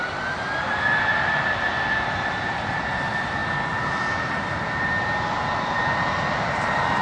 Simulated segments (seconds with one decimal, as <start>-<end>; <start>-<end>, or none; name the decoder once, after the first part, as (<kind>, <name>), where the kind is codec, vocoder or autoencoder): 0.0-7.0 (vocoder, BigVGAN v2)